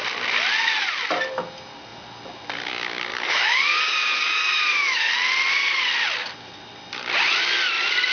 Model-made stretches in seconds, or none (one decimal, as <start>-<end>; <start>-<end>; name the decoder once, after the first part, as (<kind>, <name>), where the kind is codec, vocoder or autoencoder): 3.1-5.1 (codec, DAC)